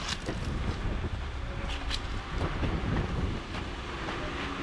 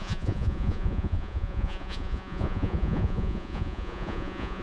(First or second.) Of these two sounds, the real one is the first